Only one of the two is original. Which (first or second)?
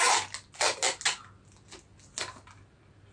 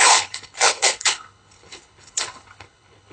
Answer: first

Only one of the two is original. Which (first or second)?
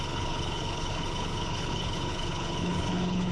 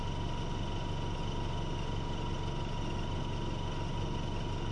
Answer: second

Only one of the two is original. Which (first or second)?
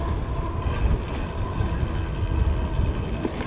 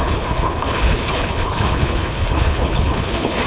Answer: first